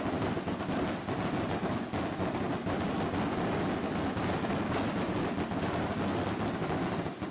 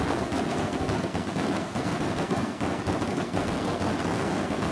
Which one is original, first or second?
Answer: first